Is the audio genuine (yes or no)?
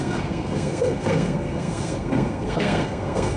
no